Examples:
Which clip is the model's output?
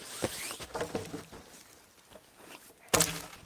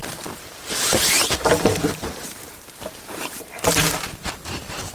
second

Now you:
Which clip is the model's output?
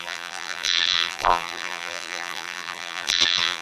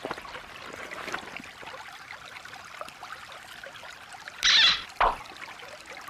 first